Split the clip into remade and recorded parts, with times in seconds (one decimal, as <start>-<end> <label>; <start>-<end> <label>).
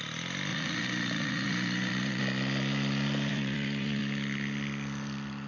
0.0-0.5 recorded; 0.5-2.2 remade; 2.2-3.3 recorded; 3.3-4.0 remade; 4.0-5.5 recorded